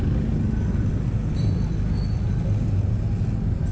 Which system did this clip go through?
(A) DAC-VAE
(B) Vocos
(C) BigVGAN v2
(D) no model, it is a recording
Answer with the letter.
D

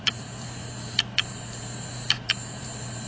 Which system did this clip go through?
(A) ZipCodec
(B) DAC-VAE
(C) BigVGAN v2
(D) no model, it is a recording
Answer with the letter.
C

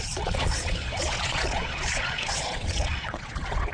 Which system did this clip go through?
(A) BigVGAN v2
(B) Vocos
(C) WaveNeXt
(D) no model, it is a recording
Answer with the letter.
B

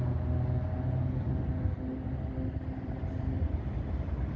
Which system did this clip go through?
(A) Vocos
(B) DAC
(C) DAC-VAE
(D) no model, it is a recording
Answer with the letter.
D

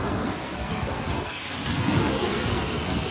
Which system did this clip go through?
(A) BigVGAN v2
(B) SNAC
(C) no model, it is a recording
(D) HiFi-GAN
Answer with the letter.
B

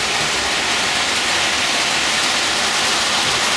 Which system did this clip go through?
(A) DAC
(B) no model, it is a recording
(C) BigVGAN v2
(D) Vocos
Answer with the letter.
B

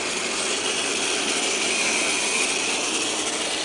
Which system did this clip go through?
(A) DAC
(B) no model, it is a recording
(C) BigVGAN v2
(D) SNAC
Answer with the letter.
B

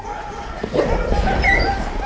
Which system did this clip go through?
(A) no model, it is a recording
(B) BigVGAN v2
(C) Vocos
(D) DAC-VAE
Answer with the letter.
A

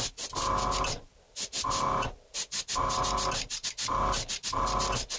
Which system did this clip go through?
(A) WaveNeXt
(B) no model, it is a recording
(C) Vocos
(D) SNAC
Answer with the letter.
B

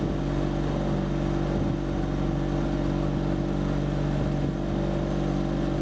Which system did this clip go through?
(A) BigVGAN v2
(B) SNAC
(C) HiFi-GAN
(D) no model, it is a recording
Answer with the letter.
D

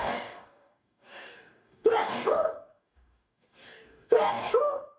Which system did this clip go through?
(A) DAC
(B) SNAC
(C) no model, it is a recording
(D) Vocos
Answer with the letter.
A